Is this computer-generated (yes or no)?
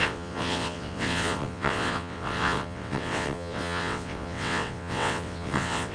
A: yes